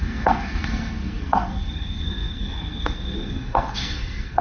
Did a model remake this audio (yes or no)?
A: yes